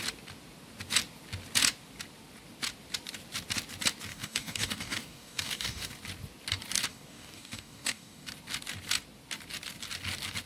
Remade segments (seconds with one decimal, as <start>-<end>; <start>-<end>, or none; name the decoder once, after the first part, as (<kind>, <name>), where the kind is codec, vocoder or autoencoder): 4.1-5.9 (codec, DAC); 6.9-8.3